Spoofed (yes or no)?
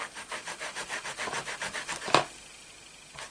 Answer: no